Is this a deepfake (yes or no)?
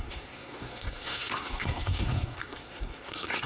yes